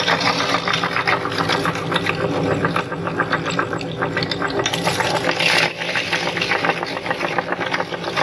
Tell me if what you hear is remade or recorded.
recorded